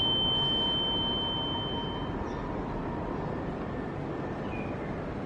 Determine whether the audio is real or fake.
real